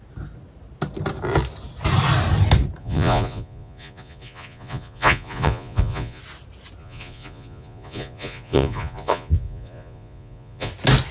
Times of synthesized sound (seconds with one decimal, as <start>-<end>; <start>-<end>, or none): 2.8-6.2; 6.8-10.7